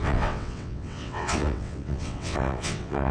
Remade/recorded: remade